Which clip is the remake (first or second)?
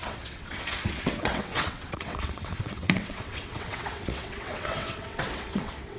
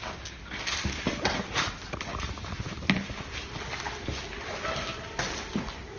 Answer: first